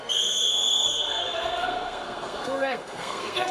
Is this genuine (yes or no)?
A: no